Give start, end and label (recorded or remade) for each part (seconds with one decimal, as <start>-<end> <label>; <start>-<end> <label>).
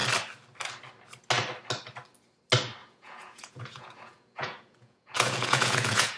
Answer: 0.0-2.8 recorded; 2.8-6.2 remade